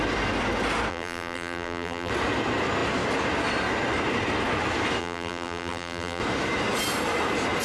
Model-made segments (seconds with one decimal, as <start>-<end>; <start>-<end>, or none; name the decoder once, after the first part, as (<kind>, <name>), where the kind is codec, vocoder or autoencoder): 0.9-2.1 (vocoder, BigVGAN v2); 5.0-6.2

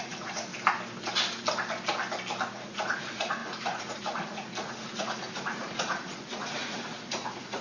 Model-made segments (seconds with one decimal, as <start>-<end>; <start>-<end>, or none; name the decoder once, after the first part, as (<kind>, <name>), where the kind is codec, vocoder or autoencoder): 0.0-0.5 (vocoder, Vocos); 2.5-7.6

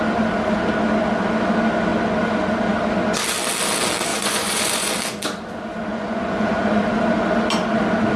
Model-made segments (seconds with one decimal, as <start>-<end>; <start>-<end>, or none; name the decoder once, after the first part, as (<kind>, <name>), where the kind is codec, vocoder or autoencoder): 4.1-4.9 (vocoder, Vocos); 5.9-6.8